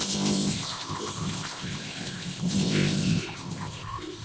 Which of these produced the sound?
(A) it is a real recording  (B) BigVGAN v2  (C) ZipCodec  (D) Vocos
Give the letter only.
C